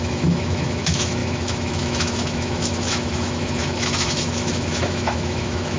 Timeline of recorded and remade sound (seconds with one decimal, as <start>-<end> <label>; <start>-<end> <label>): 0.0-5.8 remade